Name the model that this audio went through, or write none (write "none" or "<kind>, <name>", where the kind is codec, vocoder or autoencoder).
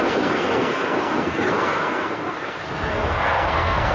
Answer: codec, SNAC